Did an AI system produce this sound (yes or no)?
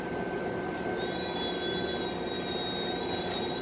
no